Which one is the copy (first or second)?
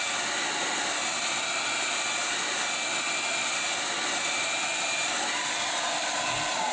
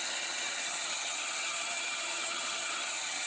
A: second